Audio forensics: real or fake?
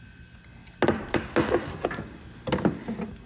real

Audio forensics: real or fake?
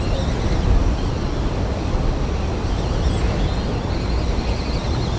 real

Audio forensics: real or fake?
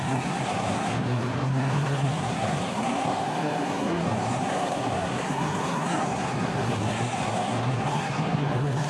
fake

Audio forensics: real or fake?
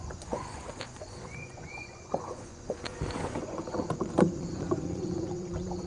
fake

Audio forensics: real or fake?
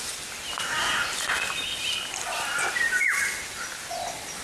real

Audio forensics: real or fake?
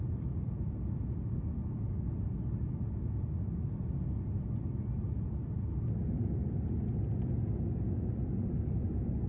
real